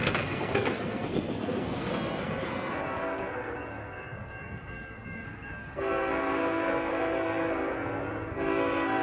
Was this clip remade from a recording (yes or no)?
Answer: yes